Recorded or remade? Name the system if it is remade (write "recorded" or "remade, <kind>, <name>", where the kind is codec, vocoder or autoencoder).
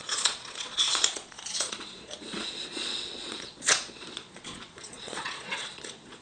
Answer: remade, vocoder, Vocos